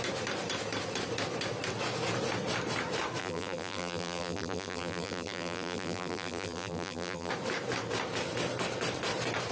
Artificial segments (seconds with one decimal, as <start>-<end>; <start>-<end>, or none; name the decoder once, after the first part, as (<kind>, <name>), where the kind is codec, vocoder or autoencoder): 3.2-7.3 (vocoder, BigVGAN v2)